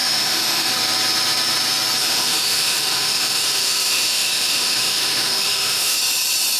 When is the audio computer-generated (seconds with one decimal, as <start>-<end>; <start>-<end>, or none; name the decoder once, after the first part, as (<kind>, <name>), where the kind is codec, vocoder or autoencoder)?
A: 0.0-0.7 (autoencoder, DAC-VAE); 2.0-6.0